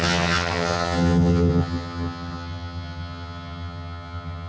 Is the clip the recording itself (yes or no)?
no